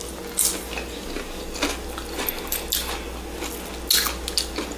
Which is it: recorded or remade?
recorded